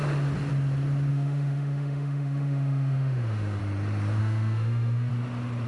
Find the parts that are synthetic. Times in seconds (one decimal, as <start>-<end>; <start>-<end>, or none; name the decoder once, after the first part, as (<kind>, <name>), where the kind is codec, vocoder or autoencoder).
1.1-3.6 (autoencoder, DAC-VAE); 4.2-5.1